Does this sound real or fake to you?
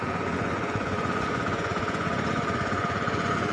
fake